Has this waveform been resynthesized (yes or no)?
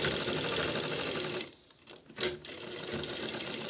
no